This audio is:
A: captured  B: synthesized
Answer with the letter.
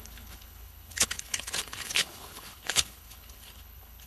B